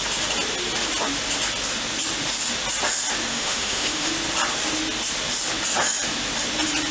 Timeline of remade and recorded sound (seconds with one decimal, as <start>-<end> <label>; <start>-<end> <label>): 0.0-3.3 recorded; 3.3-4.1 remade; 4.1-6.9 recorded

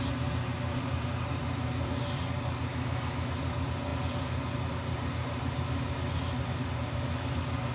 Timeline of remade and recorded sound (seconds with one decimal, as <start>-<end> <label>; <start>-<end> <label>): 0.0-2.7 recorded; 2.7-3.3 remade; 3.3-7.7 recorded

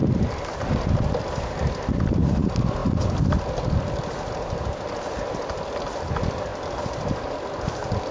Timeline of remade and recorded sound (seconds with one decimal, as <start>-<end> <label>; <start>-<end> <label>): 0.0-8.1 recorded

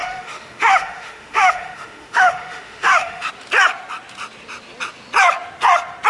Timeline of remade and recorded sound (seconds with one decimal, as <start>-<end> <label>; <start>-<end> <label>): 0.0-3.3 remade; 3.3-6.1 recorded

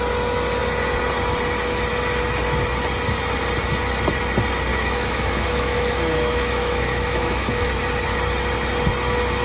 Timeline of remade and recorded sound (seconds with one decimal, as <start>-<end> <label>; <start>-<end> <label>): 0.0-4.7 recorded; 4.7-7.7 remade; 7.7-9.4 recorded